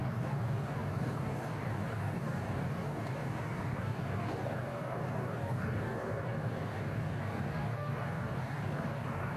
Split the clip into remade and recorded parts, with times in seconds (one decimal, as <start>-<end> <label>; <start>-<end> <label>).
0.0-9.4 remade

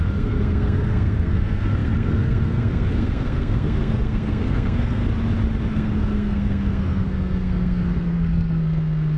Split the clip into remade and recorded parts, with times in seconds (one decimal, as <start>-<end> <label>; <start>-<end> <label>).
0.0-5.0 remade; 5.0-5.7 recorded; 5.7-9.2 remade

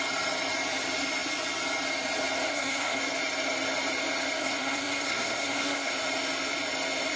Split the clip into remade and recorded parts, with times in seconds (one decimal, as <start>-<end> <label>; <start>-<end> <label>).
0.0-2.5 recorded; 2.5-3.0 remade; 3.0-4.4 recorded; 4.4-5.9 remade; 5.9-7.2 recorded

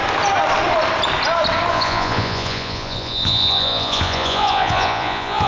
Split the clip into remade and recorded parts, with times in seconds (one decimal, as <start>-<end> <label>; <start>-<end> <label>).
0.0-1.7 recorded; 1.7-5.5 remade

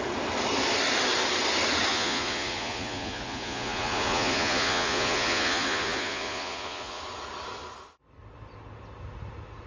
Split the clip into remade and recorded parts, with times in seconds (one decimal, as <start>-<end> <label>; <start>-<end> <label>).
0.0-1.9 recorded; 1.9-7.0 remade; 7.0-9.7 recorded

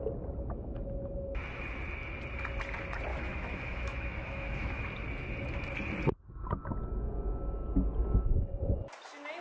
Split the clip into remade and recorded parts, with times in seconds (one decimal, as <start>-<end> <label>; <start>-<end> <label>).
0.0-3.1 recorded; 3.1-4.8 remade; 4.8-9.4 recorded

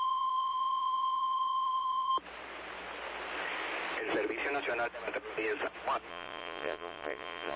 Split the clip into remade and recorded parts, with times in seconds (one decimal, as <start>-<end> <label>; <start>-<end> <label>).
0.0-2.1 remade; 2.1-6.1 recorded; 6.1-7.6 remade

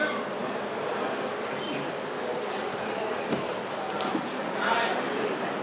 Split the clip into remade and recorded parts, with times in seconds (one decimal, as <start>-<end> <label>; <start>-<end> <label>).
0.0-0.4 recorded; 0.4-1.0 remade; 1.0-2.3 recorded; 2.3-5.6 remade